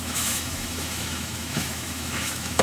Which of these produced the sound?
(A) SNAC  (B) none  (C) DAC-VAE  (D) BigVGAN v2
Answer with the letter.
C